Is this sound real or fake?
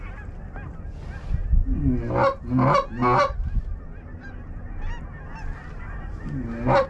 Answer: real